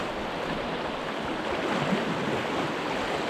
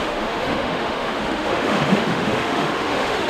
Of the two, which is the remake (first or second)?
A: second